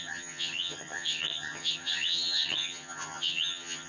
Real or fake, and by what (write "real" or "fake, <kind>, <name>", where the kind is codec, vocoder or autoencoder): fake, vocoder, HiFi-GAN